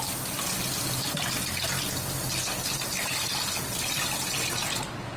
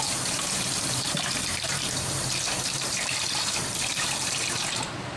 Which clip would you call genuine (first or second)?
first